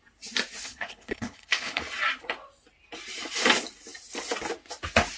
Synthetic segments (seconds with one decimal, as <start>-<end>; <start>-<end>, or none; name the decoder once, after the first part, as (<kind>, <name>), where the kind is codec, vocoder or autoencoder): 0.6-1.8 (codec, HILCodec)